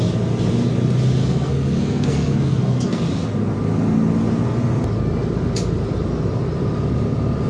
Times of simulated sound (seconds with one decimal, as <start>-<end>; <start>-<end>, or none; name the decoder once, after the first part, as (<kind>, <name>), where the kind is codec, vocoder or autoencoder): 1.2-3.0 (codec, SNAC)